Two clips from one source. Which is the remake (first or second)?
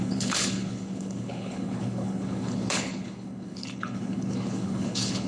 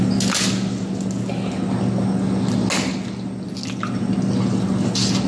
first